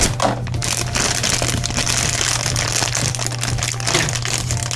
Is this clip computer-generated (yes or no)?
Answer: no